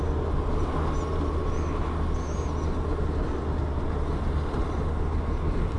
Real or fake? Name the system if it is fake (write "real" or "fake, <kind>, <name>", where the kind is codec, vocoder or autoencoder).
real